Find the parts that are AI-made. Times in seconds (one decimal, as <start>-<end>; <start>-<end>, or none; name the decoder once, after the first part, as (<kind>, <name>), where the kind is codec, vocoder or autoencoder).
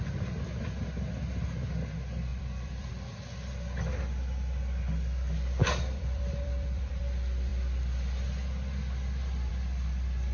2.3-2.9 (vocoder, BigVGAN v2); 5.6-7.0